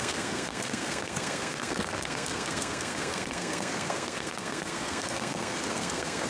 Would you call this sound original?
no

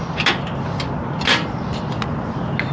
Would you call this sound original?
yes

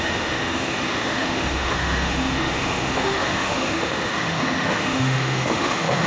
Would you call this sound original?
no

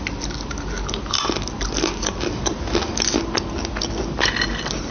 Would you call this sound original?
yes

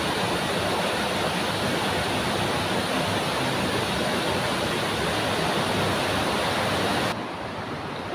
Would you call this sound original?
yes